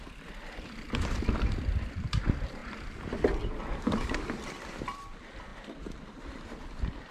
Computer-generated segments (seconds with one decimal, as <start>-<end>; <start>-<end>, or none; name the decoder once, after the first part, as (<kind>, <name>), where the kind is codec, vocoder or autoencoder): 0.0-2.6 (vocoder, BigVGAN v2); 3.6-7.1

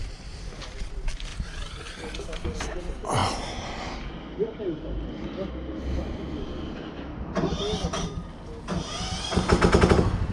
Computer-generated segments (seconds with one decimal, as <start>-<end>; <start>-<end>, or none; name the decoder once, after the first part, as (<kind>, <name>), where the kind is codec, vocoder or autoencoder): none

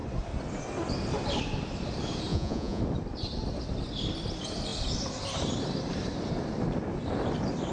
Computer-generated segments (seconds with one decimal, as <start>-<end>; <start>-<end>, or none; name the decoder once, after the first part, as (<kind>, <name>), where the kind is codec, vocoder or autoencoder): 2.3-2.8 (vocoder, Vocos)

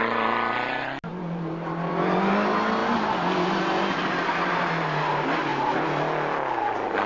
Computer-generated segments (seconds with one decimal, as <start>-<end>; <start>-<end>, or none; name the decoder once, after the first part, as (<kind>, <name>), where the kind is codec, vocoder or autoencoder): none

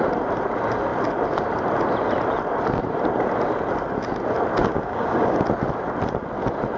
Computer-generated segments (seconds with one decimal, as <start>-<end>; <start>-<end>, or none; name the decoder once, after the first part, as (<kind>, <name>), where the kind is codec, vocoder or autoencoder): 4.6-5.4 (codec, DAC)

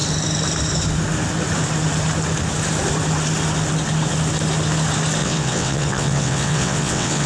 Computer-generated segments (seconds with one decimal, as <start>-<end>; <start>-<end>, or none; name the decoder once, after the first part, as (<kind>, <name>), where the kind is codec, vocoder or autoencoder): 5.2-7.3 (vocoder, WaveNeXt)